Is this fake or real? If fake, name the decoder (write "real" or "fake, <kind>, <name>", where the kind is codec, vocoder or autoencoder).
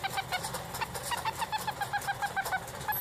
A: real